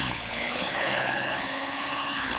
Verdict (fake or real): fake